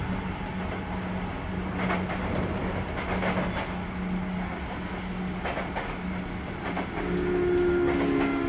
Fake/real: real